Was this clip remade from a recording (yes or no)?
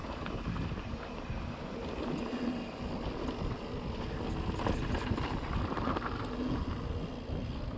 no